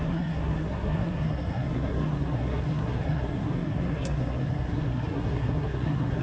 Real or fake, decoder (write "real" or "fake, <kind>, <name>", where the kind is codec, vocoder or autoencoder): fake, codec, SNAC